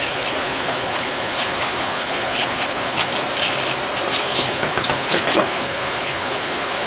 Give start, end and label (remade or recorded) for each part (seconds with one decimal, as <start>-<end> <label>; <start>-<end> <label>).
0.0-3.1 remade; 3.1-4.2 recorded; 4.2-6.9 remade